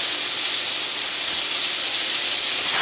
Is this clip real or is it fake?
real